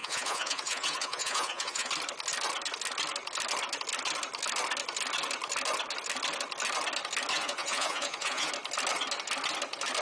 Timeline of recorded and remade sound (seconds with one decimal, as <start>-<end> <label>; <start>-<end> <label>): 0.0-1.9 remade; 1.9-7.3 recorded; 7.3-8.5 remade; 8.5-10.0 recorded

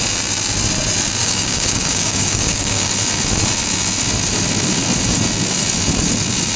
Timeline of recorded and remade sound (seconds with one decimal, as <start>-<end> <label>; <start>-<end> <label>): 0.0-1.2 recorded; 1.2-2.9 remade; 2.9-6.6 recorded

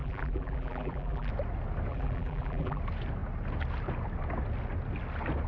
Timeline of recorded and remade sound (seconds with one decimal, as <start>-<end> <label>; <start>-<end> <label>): 0.0-1.3 remade; 1.3-1.9 recorded; 1.9-2.8 remade; 2.8-5.5 recorded

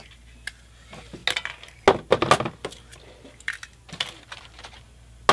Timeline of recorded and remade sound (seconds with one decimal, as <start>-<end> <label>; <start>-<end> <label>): 0.0-5.3 recorded

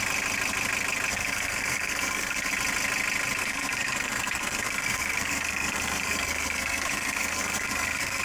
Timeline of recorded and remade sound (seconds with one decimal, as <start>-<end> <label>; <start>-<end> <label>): 0.0-1.1 recorded; 1.1-2.5 remade; 2.5-3.4 recorded; 3.4-8.2 remade

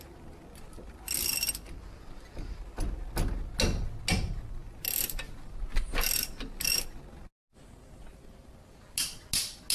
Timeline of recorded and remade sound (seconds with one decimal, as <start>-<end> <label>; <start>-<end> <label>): 0.0-9.7 recorded

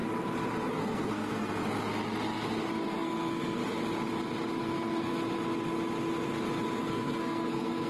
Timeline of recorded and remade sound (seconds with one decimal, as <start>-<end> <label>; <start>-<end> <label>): 0.0-0.7 recorded; 0.7-1.6 remade; 1.6-2.8 recorded; 2.8-3.6 remade; 3.6-4.6 recorded; 4.6-5.1 remade; 5.1-6.8 recorded; 6.8-7.9 remade